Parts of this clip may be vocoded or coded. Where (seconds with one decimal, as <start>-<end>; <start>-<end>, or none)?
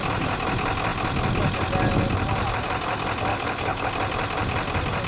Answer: 3.3-3.9